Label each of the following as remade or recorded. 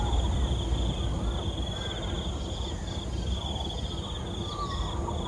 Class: recorded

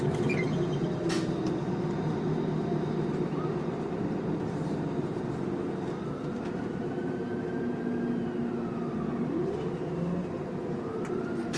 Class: recorded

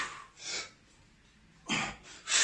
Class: recorded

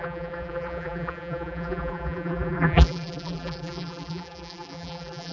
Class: remade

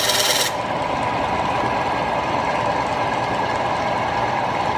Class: recorded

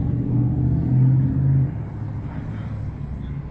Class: recorded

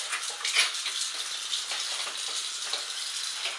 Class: recorded